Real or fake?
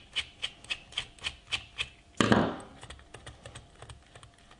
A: real